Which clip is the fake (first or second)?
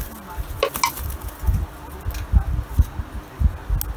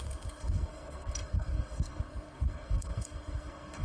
second